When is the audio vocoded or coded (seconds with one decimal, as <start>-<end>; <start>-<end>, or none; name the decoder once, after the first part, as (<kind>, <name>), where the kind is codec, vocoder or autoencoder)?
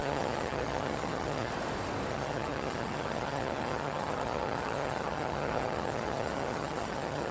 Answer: 0.0-1.5 (vocoder, HiFi-GAN); 2.1-7.3